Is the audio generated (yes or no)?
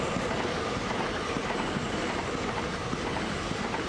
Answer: no